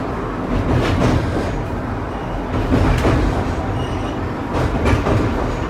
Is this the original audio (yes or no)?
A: yes